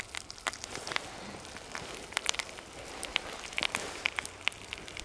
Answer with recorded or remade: recorded